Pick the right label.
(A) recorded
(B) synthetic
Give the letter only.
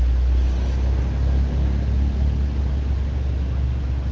A